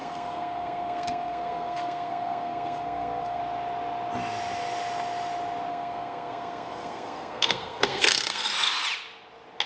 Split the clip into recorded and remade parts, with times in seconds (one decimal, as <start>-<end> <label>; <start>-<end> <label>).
0.0-3.4 remade; 3.4-5.7 recorded; 5.7-8.5 remade; 8.5-9.7 recorded